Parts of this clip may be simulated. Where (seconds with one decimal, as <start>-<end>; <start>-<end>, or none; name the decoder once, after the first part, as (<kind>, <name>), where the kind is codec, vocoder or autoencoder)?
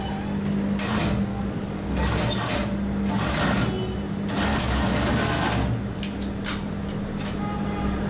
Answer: 1.3-2.2 (codec, DAC); 4.5-5.1